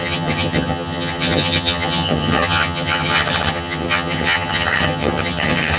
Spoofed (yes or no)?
yes